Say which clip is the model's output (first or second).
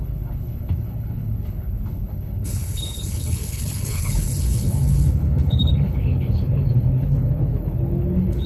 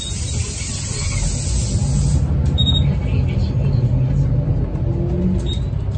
first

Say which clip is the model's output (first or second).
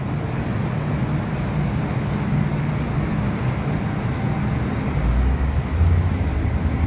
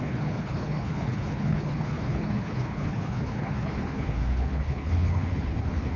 second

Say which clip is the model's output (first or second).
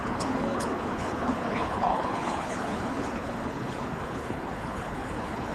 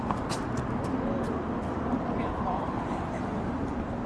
first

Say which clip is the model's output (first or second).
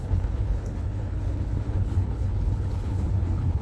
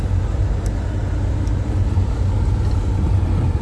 first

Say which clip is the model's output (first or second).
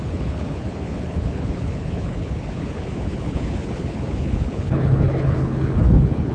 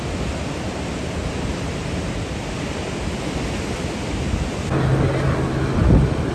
first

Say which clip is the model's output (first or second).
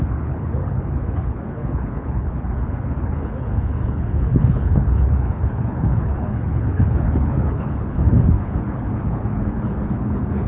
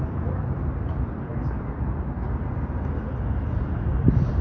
first